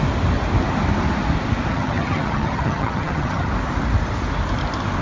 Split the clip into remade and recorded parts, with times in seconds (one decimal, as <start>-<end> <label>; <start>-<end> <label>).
0.0-1.7 recorded; 1.7-3.5 remade; 3.5-5.0 recorded